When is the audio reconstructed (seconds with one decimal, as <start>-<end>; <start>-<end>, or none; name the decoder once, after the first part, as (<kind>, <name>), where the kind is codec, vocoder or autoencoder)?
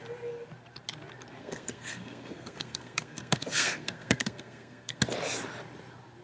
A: 1.4-5.0 (codec, SNAC)